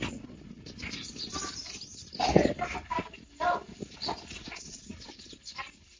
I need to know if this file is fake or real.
real